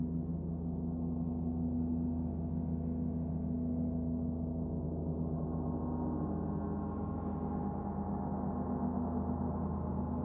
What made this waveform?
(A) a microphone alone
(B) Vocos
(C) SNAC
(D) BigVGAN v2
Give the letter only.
A